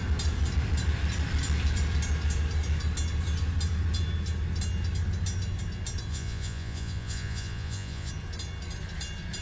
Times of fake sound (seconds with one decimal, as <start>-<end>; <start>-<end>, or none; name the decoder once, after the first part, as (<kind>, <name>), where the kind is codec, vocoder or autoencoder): 6.1-8.1 (vocoder, Vocos)